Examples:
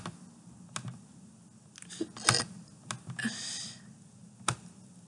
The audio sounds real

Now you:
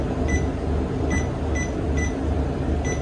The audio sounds real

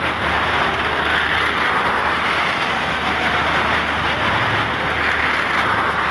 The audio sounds real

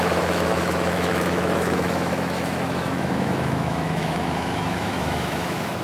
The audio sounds fake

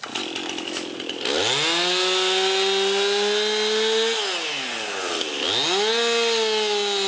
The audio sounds real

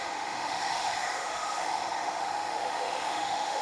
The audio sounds fake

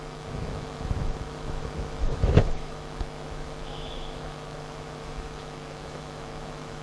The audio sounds fake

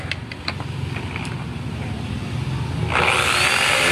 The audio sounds real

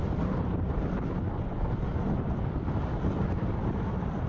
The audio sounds real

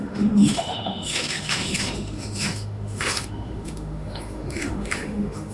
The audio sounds fake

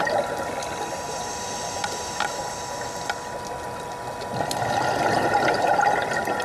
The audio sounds real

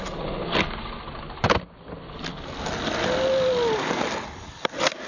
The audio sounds real